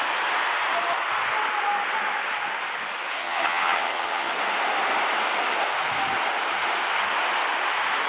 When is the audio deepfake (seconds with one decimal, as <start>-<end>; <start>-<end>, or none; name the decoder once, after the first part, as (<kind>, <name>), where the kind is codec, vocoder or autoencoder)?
3.2-4.3 (vocoder, HiFi-GAN)